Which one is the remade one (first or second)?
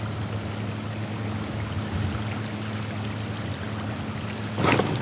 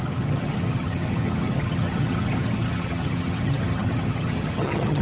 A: second